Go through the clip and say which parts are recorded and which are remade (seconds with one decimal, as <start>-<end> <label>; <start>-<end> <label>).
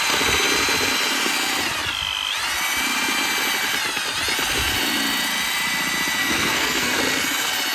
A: 0.0-6.2 recorded; 6.2-7.0 remade; 7.0-7.7 recorded